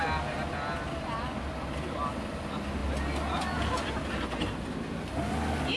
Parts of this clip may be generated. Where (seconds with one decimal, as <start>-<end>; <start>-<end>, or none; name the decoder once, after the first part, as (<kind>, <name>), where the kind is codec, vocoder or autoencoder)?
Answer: none